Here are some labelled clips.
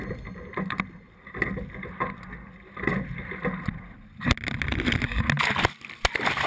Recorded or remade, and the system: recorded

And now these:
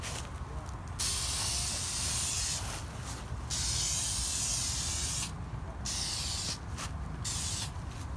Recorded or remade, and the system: recorded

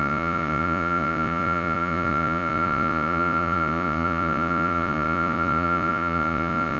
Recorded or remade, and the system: remade, vocoder, Vocos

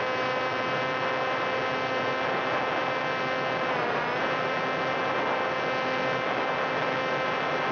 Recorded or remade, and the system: recorded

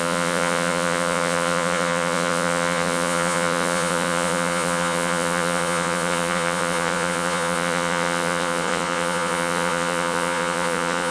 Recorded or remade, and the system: remade, vocoder, Vocos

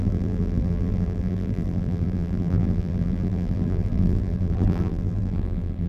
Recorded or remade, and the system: remade, vocoder, BigVGAN v2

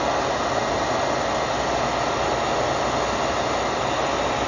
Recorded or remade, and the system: recorded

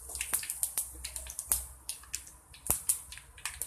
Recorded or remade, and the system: recorded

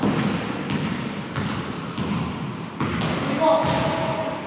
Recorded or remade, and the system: recorded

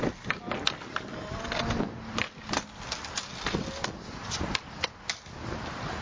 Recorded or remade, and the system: recorded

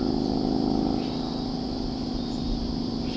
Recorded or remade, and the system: recorded